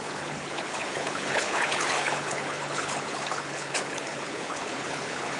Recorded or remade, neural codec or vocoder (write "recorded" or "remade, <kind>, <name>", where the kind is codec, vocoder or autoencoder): remade, codec, HILCodec